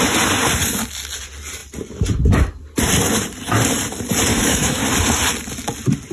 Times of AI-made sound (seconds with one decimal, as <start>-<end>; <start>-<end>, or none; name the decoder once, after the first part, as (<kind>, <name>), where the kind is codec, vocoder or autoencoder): 4.3-4.8 (autoencoder, DAC-VAE)